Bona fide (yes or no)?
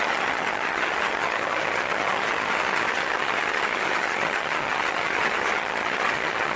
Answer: no